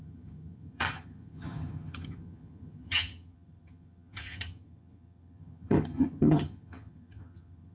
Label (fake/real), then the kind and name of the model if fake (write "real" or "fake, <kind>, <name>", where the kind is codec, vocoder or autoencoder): fake, vocoder, HiFi-GAN